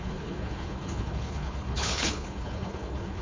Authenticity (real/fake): fake